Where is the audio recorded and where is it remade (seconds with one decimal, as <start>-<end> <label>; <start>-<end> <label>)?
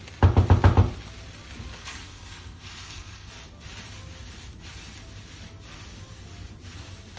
0.0-1.8 recorded; 1.8-3.3 remade; 3.3-7.2 recorded